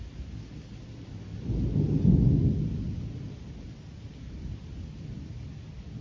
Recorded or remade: recorded